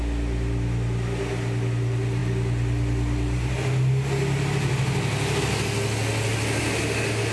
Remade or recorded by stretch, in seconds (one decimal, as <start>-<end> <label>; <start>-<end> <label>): 0.0-7.3 recorded